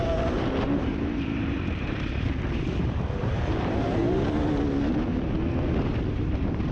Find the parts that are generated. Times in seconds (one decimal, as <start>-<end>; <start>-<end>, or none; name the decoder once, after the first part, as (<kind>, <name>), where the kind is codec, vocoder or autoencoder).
0.0-4.0 (vocoder, BigVGAN v2); 6.2-6.7